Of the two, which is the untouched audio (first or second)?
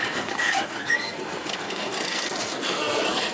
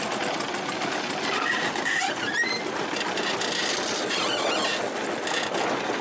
second